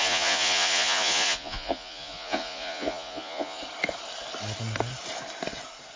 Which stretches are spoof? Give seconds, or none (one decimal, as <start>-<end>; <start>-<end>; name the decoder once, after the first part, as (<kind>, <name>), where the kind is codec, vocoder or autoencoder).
0.0-3.6 (vocoder, Vocos)